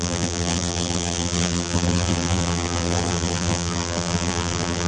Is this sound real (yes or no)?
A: no